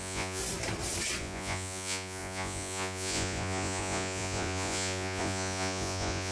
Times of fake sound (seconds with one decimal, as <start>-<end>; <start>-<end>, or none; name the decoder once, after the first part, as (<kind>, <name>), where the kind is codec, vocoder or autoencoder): 0.0-0.4 (vocoder, Vocos); 1.2-6.3